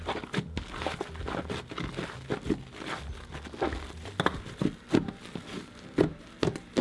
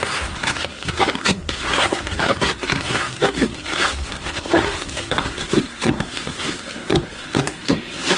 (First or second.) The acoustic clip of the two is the first